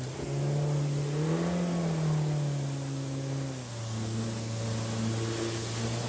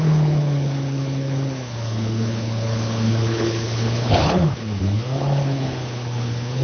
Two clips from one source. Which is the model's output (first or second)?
second